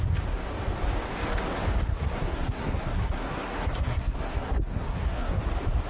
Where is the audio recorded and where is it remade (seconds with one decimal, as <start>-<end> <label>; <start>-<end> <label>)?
0.0-1.9 recorded; 1.9-5.4 remade; 5.4-5.9 recorded